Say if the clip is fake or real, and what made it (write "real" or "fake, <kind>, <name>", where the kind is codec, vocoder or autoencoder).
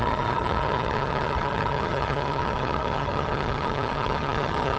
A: fake, vocoder, HiFi-GAN